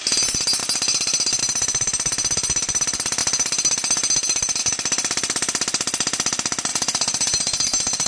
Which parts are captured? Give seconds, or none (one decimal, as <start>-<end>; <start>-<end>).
0.0-6.7